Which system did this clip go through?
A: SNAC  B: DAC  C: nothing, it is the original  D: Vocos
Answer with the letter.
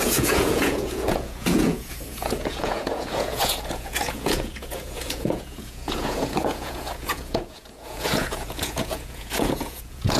D